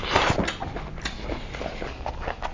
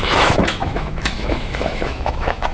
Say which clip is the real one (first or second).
first